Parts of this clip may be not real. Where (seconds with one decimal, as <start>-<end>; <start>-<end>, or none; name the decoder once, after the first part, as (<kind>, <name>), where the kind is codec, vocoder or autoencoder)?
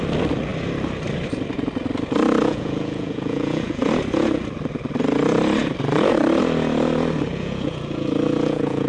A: 2.4-3.9 (vocoder, Vocos); 7.3-8.9